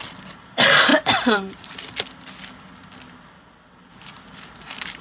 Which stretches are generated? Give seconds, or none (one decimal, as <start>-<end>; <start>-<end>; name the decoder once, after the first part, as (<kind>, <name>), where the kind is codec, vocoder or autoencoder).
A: 0.9-1.6 (vocoder, BigVGAN v2)